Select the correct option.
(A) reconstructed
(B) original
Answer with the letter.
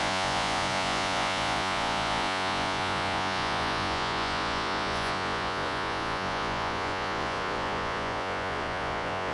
A